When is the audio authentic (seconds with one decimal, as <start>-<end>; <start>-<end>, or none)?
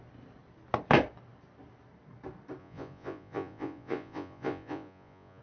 0.0-2.6